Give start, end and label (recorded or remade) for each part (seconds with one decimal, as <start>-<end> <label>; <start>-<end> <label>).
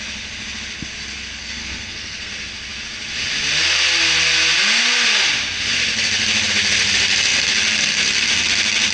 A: 0.0-1.4 recorded; 1.4-2.3 remade; 2.3-8.9 recorded